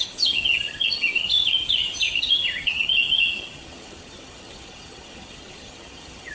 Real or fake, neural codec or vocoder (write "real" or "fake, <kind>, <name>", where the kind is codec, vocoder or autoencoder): fake, vocoder, HiFi-GAN